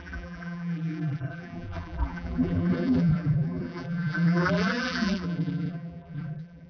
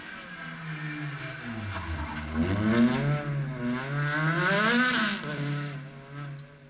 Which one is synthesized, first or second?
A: first